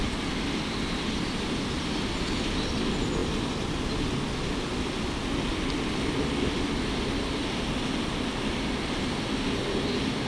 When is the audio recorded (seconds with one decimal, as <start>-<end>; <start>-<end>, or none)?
0.0-10.3